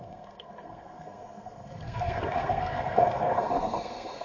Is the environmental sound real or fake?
fake